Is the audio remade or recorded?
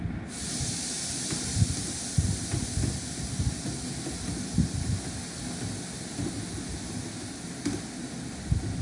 recorded